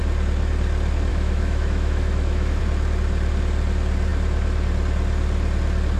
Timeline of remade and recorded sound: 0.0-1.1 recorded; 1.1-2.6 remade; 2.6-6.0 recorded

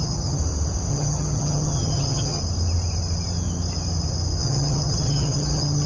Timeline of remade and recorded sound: 0.0-0.4 remade; 0.4-0.9 recorded; 0.9-2.4 remade; 2.4-4.4 recorded; 4.4-5.9 remade

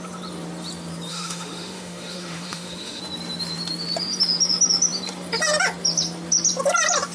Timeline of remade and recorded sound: 0.0-1.1 recorded; 1.1-3.0 remade; 3.0-7.1 recorded

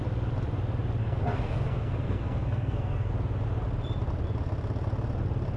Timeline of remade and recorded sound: 0.0-1.0 recorded; 1.0-3.1 remade; 3.1-5.6 recorded